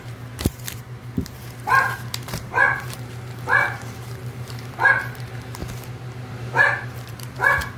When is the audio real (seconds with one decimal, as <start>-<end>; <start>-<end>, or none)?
5.6-6.3